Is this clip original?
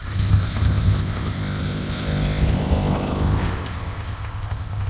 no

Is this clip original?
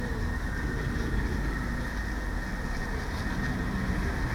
yes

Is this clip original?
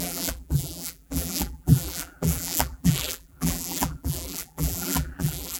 no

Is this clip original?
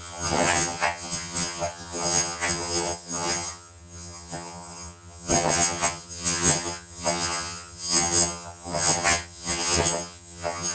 no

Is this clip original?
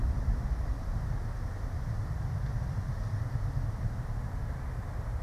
yes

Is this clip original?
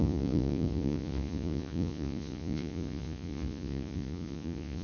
no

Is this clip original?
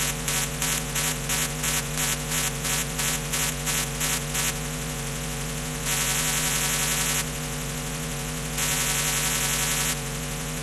no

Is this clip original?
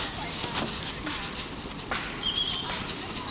yes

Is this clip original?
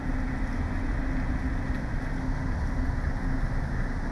yes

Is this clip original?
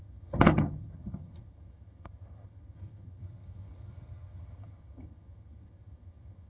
no